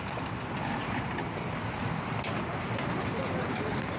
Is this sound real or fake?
real